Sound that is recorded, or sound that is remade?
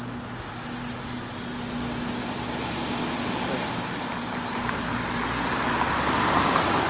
recorded